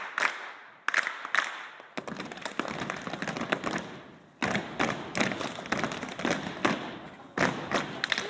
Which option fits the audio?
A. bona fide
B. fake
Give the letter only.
A